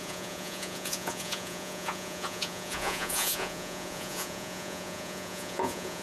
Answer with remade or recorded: remade